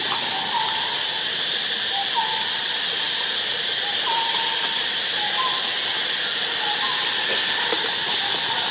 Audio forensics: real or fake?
real